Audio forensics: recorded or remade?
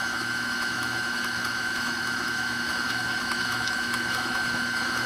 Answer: remade